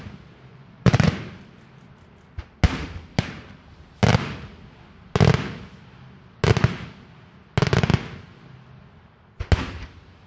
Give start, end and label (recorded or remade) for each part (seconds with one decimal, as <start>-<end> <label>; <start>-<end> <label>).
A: 0.0-0.5 recorded; 0.5-1.1 remade; 1.1-10.3 recorded